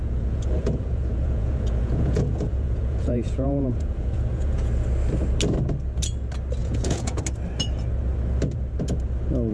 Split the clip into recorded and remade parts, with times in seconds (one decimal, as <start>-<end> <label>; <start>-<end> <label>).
0.0-4.7 remade; 4.7-6.6 recorded; 6.6-7.2 remade; 7.2-9.5 recorded